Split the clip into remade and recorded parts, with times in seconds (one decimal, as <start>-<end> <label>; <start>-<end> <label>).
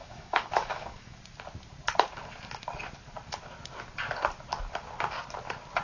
0.0-1.2 remade; 1.2-5.8 recorded